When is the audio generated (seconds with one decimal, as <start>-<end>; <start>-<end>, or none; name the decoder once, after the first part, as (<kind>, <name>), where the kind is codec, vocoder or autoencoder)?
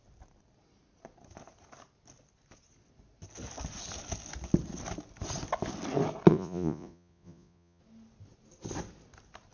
6.3-7.8 (vocoder, Vocos)